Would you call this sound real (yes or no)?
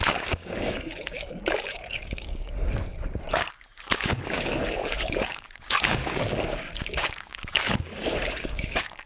no